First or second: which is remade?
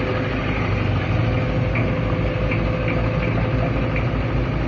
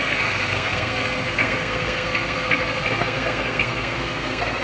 second